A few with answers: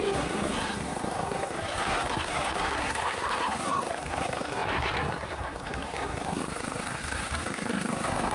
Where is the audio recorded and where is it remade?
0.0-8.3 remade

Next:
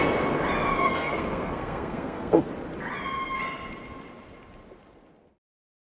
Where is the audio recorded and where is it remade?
0.0-0.8 recorded; 0.8-2.5 remade; 2.5-5.8 recorded

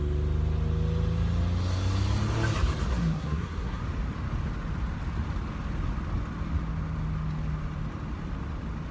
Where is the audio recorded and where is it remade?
0.0-2.9 recorded; 2.9-3.8 remade; 3.8-8.9 recorded

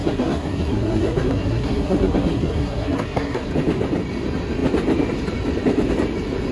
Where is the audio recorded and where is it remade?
0.0-3.5 remade; 3.5-6.5 recorded